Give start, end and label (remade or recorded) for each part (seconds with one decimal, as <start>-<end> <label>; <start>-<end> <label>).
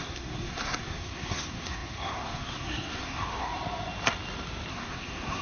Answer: 0.0-3.5 remade; 3.5-4.7 recorded; 4.7-5.4 remade